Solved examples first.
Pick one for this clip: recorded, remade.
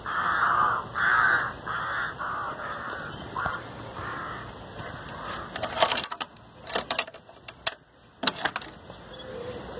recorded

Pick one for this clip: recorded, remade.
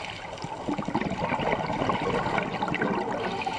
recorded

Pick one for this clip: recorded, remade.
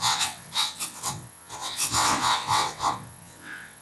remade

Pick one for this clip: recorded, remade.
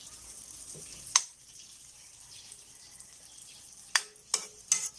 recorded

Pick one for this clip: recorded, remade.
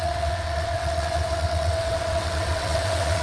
remade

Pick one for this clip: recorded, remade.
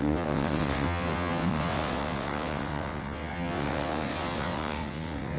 remade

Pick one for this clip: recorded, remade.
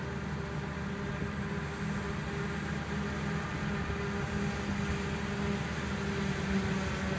recorded